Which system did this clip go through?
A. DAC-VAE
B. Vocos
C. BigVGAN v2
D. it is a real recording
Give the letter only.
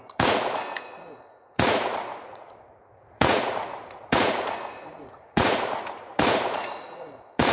B